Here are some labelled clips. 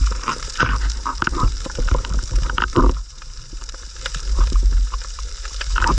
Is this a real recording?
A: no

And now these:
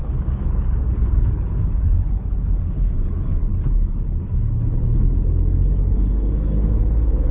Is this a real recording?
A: no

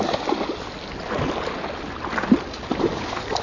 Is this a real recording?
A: yes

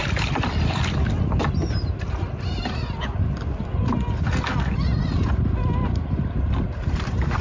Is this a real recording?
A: yes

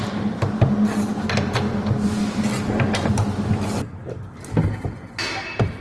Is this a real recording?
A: yes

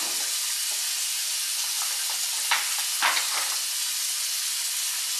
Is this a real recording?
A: yes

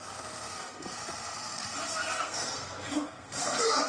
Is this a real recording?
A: no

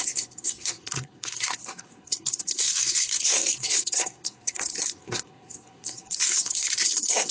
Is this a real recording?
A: no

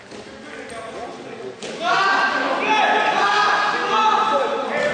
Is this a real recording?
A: yes